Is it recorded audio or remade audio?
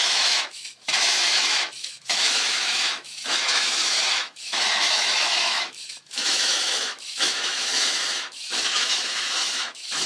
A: remade